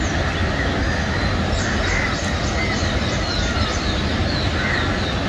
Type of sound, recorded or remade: recorded